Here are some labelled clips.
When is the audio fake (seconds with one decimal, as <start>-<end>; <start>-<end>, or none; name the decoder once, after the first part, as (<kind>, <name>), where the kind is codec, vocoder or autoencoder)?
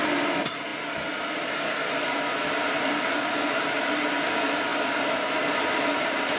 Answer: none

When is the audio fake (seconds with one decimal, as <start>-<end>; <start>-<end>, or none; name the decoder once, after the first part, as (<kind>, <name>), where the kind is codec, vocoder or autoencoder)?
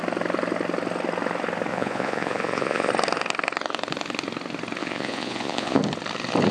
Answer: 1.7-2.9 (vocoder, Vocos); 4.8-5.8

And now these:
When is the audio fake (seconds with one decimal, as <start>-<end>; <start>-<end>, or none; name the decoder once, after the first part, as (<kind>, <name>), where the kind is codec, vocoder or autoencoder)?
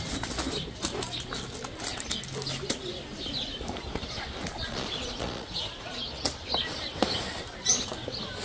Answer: 4.6-6.0 (vocoder, Vocos)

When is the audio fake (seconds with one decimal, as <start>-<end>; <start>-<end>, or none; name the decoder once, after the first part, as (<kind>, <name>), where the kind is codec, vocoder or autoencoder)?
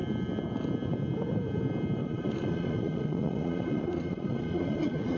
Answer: 2.0-5.2 (vocoder, Vocos)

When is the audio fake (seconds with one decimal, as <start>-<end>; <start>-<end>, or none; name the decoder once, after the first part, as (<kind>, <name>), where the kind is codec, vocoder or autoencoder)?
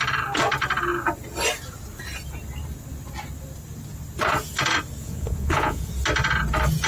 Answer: 5.0-5.9 (vocoder, Vocos)